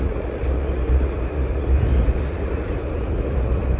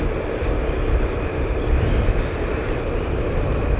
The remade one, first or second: first